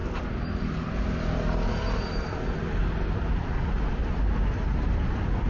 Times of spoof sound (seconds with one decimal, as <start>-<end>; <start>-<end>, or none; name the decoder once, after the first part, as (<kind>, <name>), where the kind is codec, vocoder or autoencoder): none